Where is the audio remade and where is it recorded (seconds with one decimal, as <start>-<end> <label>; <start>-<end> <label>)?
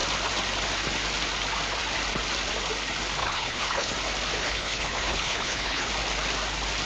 0.0-3.2 recorded; 3.2-3.9 remade; 3.9-4.4 recorded; 4.4-5.9 remade; 5.9-6.9 recorded